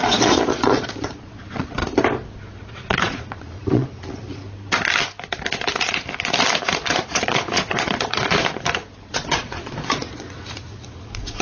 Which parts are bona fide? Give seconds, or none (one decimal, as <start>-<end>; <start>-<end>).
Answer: 1.8-2.7; 4.4-6.7; 8.4-9.1